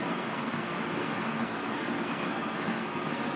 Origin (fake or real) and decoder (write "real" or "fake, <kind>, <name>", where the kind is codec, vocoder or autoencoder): fake, codec, SNAC